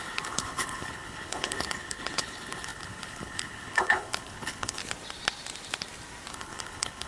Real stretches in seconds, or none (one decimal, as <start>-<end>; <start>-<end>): 4.8-6.3